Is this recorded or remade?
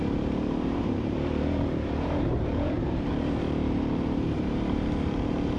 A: remade